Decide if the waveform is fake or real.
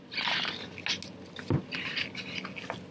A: real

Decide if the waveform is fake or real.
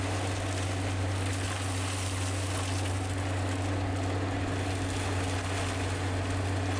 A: real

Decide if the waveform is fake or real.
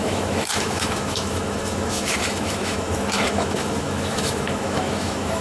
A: fake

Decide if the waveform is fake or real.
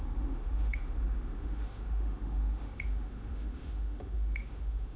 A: fake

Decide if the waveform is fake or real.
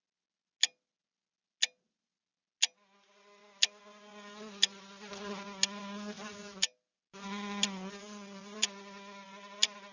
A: real